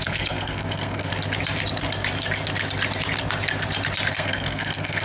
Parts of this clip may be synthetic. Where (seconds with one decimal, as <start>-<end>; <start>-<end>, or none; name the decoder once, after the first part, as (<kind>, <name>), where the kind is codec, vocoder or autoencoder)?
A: 0.0-1.1 (codec, SNAC); 4.1-5.0